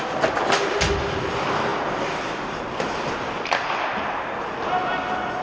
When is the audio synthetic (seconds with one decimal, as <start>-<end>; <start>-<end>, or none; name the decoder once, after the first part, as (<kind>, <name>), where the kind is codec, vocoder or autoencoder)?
none